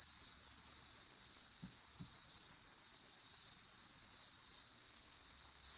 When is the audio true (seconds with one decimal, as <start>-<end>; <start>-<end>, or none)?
0.0-1.1; 1.8-4.6